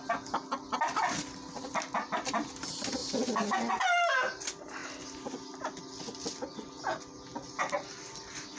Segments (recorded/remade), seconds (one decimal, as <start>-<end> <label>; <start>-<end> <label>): 0.0-8.6 recorded